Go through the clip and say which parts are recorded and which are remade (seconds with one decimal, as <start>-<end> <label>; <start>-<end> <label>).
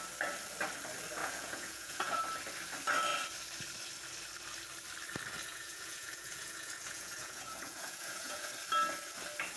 0.0-1.2 recorded; 1.2-2.2 remade; 2.2-5.5 recorded; 5.5-8.5 remade; 8.5-9.6 recorded